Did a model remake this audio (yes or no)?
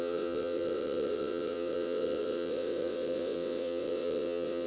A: yes